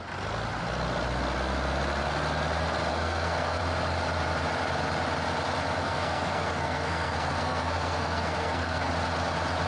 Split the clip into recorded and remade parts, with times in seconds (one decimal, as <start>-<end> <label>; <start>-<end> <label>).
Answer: 0.0-2.9 recorded; 2.9-3.6 remade; 3.6-5.8 recorded; 5.8-8.9 remade; 8.9-9.7 recorded